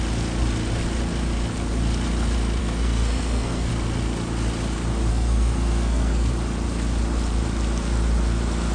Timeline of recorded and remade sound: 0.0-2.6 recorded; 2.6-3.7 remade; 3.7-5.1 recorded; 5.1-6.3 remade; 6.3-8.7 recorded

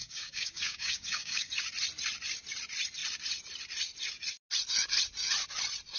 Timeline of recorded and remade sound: 0.0-1.5 remade; 1.5-6.0 recorded

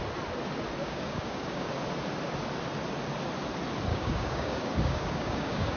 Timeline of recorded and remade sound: 0.0-0.8 recorded; 0.8-1.7 remade; 1.7-3.9 recorded; 3.9-5.8 remade